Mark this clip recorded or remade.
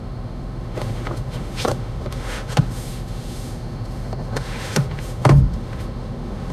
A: remade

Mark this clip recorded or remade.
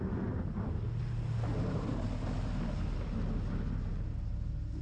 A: recorded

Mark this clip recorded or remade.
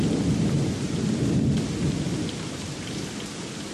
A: recorded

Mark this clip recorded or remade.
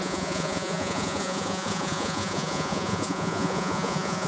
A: remade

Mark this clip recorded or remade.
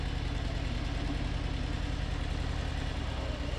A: recorded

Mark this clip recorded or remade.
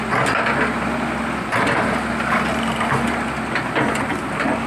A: recorded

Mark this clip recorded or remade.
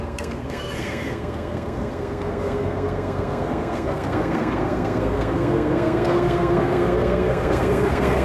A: remade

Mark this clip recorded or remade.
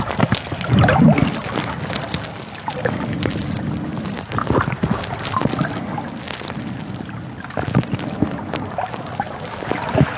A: recorded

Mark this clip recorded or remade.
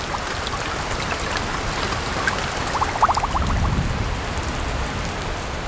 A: remade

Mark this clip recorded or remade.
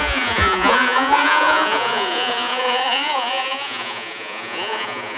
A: remade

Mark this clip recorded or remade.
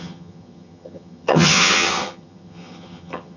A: remade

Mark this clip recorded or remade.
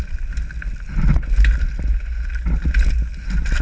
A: recorded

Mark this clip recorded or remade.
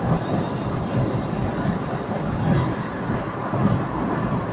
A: recorded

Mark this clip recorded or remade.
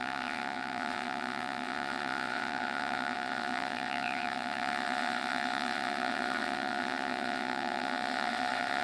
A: remade